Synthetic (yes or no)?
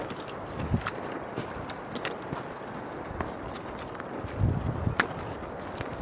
no